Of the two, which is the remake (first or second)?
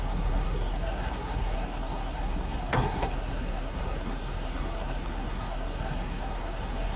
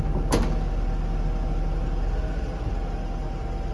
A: first